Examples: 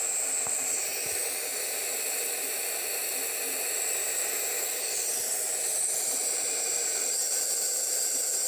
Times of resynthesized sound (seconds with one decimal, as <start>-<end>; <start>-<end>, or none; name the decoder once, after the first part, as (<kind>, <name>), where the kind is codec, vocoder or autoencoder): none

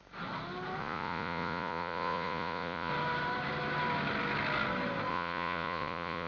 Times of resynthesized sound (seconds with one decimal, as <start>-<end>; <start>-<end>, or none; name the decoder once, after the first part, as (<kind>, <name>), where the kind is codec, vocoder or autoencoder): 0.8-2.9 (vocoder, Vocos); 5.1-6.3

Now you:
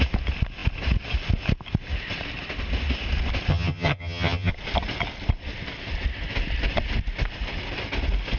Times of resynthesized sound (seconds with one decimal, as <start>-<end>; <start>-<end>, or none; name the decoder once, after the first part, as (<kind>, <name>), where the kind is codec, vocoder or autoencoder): 3.5-4.5 (vocoder, HiFi-GAN)

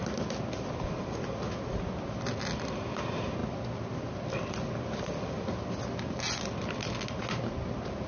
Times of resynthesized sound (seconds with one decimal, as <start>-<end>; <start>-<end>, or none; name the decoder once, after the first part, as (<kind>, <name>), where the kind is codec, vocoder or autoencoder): none

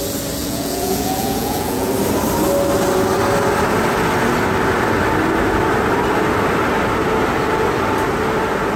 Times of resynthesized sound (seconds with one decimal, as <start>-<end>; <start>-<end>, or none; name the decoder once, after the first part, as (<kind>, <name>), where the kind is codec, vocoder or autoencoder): 0.4-1.9 (vocoder, Vocos)

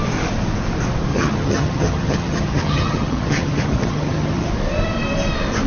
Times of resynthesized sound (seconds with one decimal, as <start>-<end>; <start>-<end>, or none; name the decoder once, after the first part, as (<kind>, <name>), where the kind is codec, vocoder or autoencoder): 1.1-4.5 (vocoder, HiFi-GAN)